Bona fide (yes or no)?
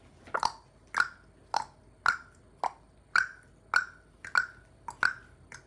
yes